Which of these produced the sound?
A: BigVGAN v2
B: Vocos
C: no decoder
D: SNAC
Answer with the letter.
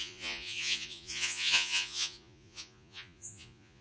B